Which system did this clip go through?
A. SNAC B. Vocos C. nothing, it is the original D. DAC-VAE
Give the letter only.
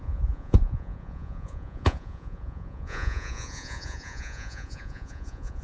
B